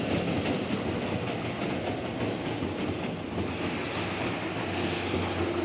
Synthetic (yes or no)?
no